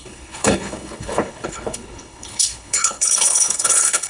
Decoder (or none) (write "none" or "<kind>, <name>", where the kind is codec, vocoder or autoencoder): codec, HILCodec